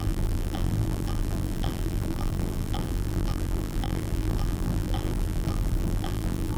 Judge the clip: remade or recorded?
remade